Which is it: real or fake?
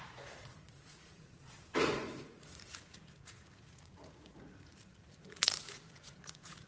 fake